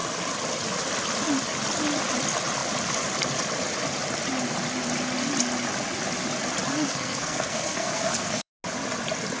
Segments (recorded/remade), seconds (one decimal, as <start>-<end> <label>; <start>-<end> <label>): 0.0-6.7 recorded; 6.7-8.5 remade; 8.5-9.4 recorded